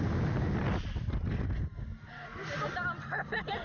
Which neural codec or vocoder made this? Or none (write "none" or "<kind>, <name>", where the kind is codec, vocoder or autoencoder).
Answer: none